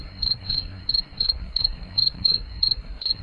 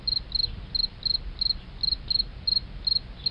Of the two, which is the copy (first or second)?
first